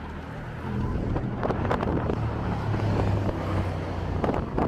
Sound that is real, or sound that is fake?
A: real